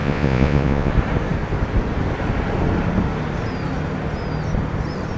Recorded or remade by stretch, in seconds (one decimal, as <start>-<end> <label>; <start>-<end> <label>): 0.0-0.9 remade; 0.9-5.2 recorded